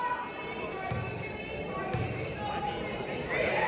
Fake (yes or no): no